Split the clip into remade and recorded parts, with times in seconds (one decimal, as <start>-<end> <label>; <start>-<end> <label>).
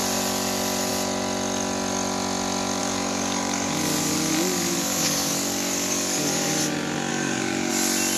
0.0-2.8 recorded; 2.8-6.5 remade; 6.5-7.1 recorded; 7.1-7.7 remade; 7.7-8.2 recorded